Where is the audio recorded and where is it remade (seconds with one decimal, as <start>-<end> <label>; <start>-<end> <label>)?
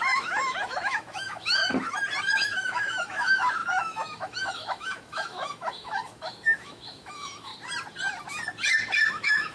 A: 0.0-1.6 remade; 1.6-2.2 recorded; 2.2-7.5 remade; 7.5-9.1 recorded; 9.1-9.5 remade